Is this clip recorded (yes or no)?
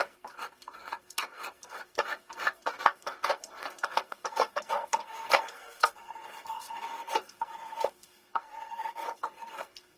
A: no